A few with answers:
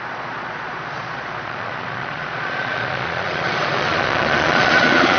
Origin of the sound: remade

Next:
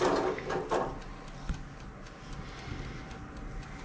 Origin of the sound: recorded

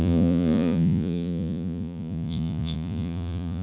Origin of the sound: remade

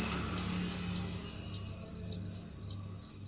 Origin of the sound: recorded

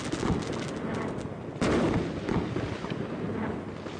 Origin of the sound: recorded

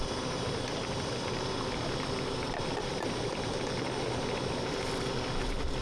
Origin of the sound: recorded